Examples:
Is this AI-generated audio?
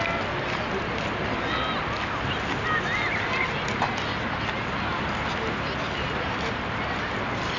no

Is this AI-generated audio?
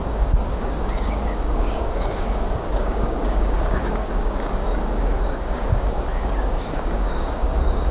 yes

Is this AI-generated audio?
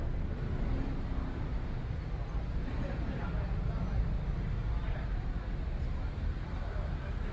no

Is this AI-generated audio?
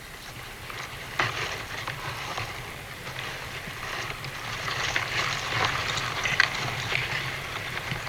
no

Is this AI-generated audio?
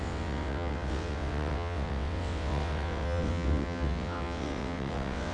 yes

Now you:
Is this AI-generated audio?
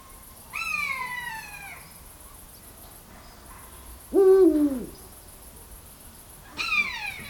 no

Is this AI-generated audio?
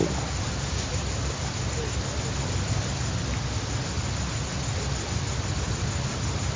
no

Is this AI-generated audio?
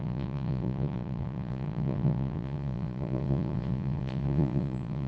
yes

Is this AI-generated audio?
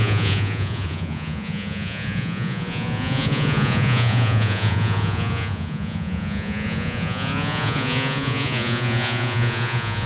yes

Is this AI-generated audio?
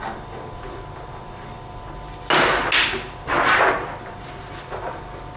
no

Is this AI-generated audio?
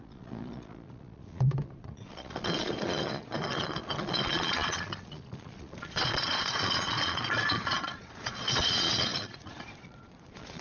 yes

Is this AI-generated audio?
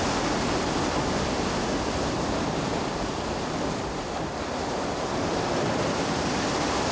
no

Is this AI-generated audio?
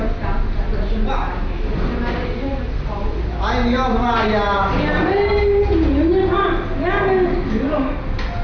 no